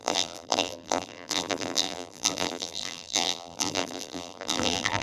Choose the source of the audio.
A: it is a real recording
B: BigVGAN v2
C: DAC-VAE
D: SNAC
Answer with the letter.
B